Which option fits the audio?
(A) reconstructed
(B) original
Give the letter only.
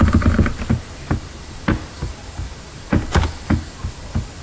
B